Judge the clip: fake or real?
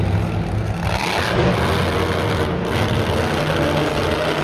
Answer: real